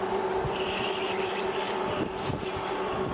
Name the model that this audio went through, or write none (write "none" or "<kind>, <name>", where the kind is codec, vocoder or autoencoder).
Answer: none